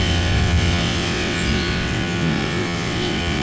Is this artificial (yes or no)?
yes